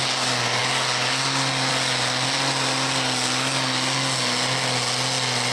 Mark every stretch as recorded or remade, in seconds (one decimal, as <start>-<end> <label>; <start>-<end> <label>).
0.0-5.5 recorded